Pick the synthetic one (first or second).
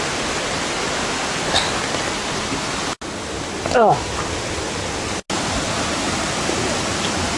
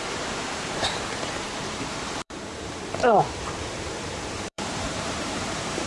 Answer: second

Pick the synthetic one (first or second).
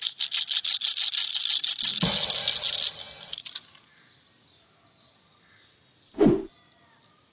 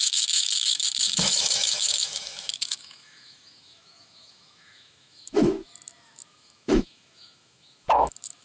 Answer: second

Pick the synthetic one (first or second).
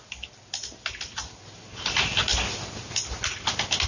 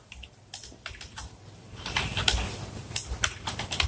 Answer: second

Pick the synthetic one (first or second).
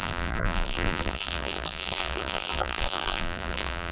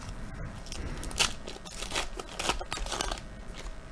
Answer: first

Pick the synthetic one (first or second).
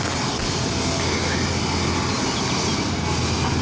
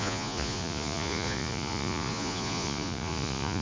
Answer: second